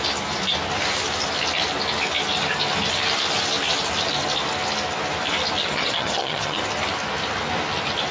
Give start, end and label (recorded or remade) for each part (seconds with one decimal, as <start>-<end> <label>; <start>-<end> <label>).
0.0-5.6 recorded; 5.6-6.6 remade; 6.6-8.1 recorded